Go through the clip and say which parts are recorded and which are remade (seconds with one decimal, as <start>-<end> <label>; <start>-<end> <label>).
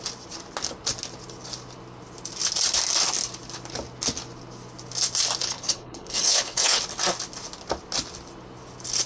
0.0-5.4 recorded; 5.4-6.8 remade; 6.8-9.1 recorded